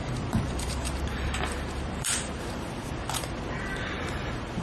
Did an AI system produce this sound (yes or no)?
yes